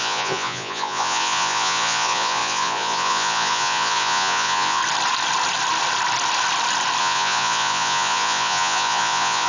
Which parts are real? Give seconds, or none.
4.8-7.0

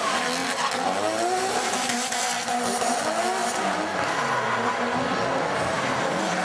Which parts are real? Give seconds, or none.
0.0-6.4

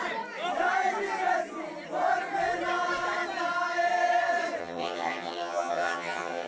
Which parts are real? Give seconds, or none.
0.0-4.6

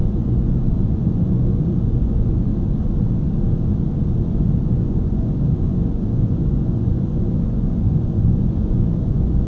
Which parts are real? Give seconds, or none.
2.5-4.3

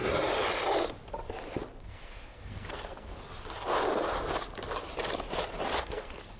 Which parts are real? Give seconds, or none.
0.0-1.8; 3.1-5.8